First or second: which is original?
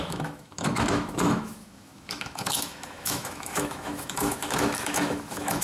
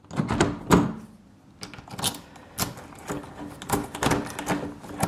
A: second